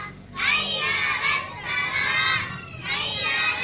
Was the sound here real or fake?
real